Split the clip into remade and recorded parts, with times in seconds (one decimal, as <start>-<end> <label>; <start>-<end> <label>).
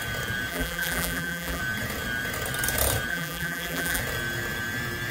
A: 0.0-0.5 recorded; 0.5-1.6 remade; 1.6-3.1 recorded; 3.1-4.0 remade; 4.0-5.1 recorded